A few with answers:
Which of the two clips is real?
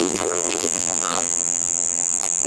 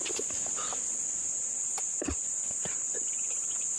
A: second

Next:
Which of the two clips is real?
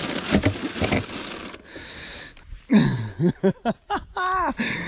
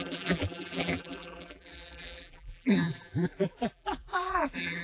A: first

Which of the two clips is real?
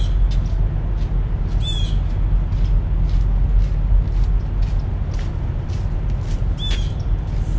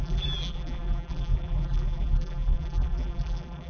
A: first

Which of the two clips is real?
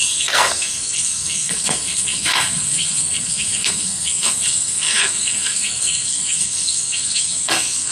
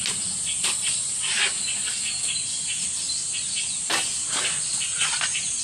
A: second